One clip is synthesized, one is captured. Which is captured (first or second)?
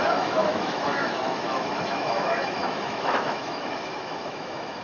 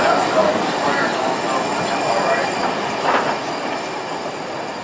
second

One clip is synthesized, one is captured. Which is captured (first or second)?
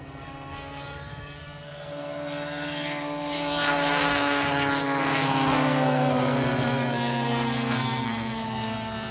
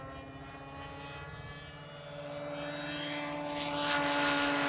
second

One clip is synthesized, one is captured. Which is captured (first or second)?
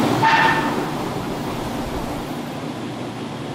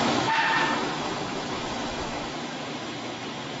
first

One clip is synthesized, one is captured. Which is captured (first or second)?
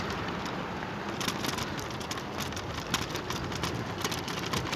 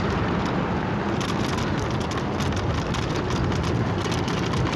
second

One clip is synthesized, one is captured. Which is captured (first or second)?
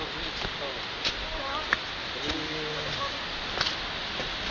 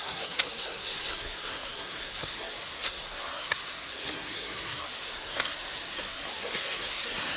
first